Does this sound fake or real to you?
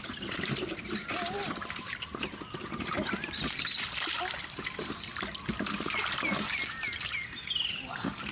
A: real